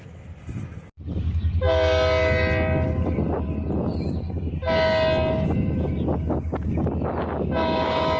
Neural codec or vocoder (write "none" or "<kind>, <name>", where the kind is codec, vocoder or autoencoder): none